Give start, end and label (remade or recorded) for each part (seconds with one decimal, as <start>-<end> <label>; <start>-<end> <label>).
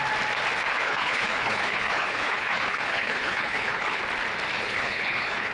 0.0-0.7 recorded; 0.7-4.0 remade; 4.0-4.6 recorded; 4.6-5.5 remade